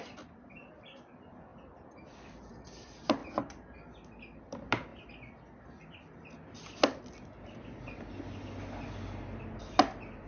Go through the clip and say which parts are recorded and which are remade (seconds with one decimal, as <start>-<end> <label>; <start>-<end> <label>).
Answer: 0.0-3.2 remade; 3.2-4.4 recorded; 4.4-4.9 remade; 4.9-9.6 recorded; 9.6-10.3 remade